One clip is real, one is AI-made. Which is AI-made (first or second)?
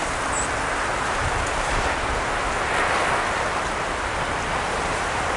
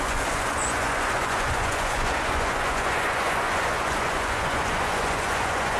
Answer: second